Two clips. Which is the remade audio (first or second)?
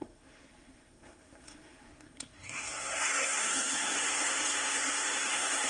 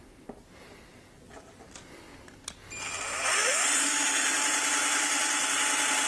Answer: first